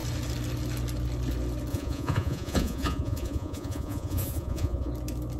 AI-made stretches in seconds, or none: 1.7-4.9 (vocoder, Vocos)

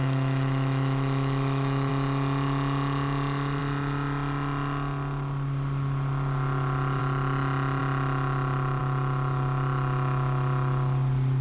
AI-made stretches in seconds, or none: 0.0-1.9 (autoencoder, DAC-VAE)

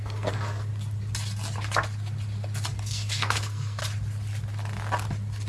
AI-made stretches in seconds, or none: 0.0-0.7 (codec, SNAC); 2.8-3.8

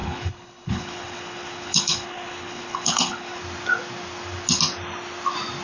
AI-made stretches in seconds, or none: 0.0-3.4 (codec, HILCodec)

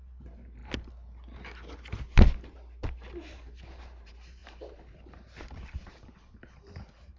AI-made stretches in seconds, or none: 0.0-0.6 (vocoder, BigVGAN v2); 3.1-7.2